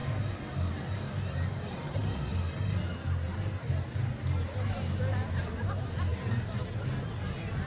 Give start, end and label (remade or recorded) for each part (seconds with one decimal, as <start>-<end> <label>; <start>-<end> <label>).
0.0-0.5 remade; 0.5-6.1 recorded; 6.1-6.6 remade; 6.6-7.7 recorded